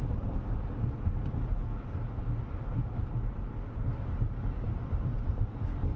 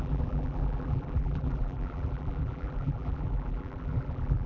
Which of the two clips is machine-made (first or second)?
second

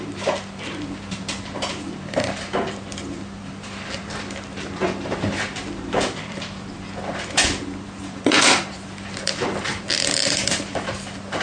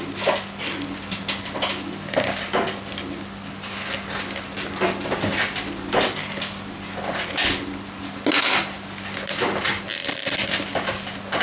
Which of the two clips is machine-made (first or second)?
first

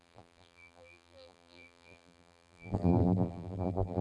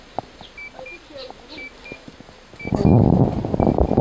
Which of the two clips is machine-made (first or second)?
first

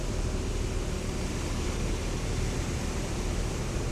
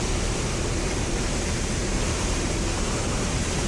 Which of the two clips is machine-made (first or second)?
second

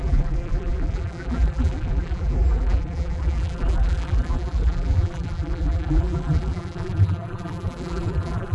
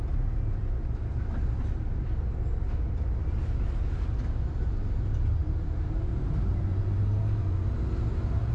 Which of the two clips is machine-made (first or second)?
first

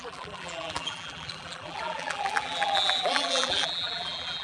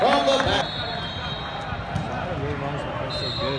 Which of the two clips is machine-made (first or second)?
first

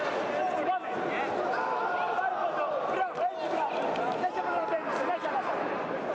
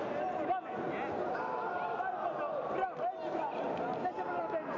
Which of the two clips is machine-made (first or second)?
first